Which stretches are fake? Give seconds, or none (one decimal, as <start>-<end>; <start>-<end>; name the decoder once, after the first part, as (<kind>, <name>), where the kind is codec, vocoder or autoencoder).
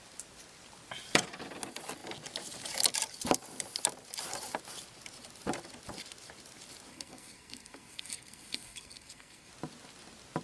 6.9-9.5 (codec, SNAC)